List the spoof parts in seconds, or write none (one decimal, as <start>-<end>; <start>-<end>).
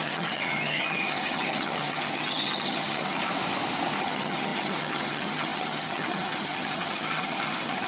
0.0-3.2; 4.0-7.9